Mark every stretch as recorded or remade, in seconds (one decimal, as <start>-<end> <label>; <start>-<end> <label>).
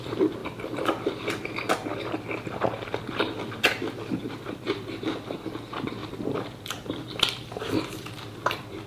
0.0-0.4 recorded; 0.4-1.9 remade; 1.9-4.1 recorded; 4.1-4.9 remade; 4.9-6.0 recorded; 6.0-8.9 remade